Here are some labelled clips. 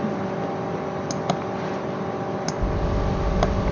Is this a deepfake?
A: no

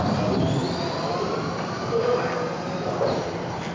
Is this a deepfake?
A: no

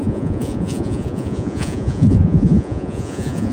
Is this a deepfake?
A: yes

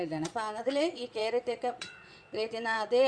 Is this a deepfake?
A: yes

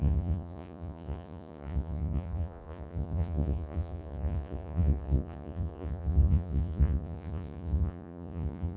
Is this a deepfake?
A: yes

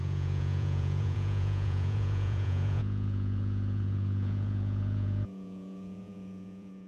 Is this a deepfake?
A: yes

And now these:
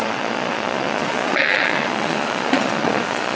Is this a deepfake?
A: yes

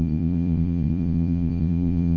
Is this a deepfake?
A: yes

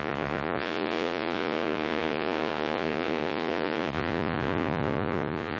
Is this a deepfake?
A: yes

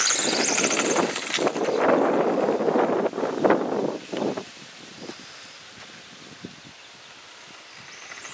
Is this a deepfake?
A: no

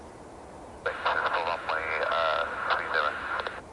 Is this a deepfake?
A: no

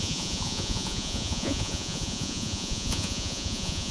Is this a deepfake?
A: yes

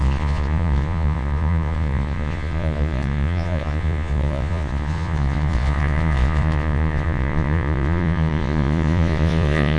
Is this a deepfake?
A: yes